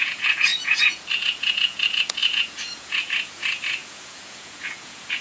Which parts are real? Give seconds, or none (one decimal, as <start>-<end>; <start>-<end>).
none